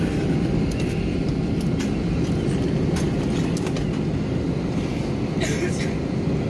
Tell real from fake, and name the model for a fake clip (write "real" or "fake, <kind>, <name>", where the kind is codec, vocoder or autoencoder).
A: real